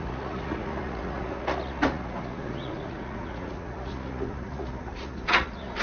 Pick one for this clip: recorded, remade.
remade